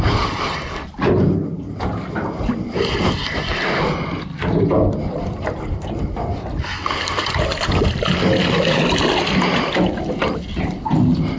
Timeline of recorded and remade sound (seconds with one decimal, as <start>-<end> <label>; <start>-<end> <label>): 0.0-11.4 recorded